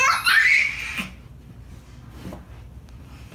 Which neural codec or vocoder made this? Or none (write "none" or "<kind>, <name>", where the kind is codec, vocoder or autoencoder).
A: none